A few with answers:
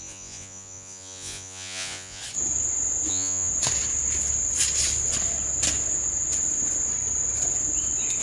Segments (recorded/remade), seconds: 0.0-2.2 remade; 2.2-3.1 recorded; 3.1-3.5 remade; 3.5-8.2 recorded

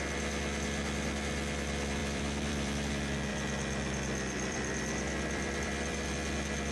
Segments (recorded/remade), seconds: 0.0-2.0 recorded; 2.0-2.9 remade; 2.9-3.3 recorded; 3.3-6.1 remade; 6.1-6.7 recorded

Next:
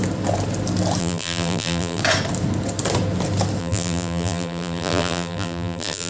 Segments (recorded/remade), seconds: 0.0-1.0 recorded; 1.0-2.0 remade; 2.0-3.6 recorded; 3.6-6.1 remade